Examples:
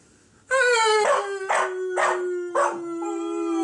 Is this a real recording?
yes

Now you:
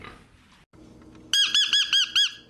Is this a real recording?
yes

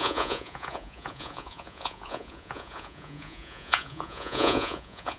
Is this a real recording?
no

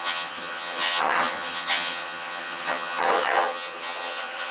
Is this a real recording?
no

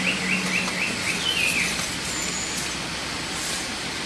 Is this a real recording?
yes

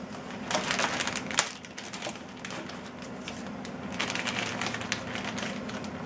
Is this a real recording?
yes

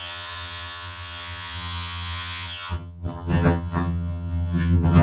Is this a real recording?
no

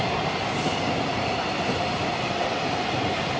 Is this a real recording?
yes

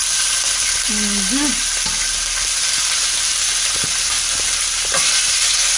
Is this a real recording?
yes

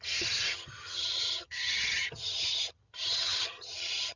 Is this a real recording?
no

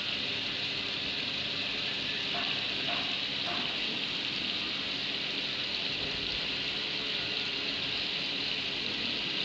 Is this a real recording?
yes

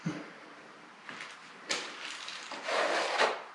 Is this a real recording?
no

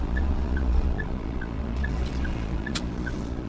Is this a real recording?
no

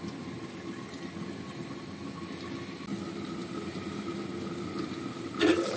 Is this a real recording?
yes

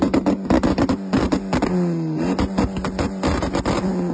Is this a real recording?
yes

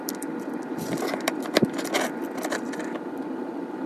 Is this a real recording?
no